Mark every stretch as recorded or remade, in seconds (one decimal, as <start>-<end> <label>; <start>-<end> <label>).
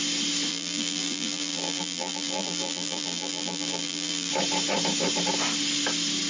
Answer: 0.0-0.5 recorded; 0.5-4.3 remade; 4.3-6.3 recorded